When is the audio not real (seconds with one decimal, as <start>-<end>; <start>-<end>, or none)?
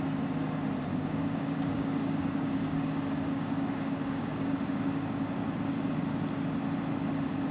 0.9-5.4